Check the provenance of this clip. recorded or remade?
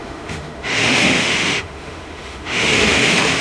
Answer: remade